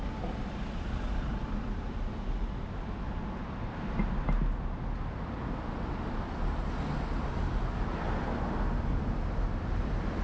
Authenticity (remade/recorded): recorded